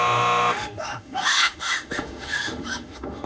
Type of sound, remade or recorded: remade